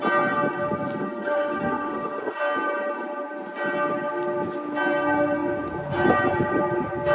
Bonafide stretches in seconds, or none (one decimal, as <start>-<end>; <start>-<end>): 0.0-1.0; 2.4-7.1